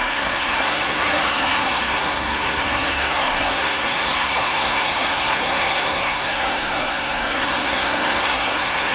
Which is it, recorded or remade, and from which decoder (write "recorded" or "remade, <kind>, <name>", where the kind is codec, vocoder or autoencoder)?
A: remade, codec, SNAC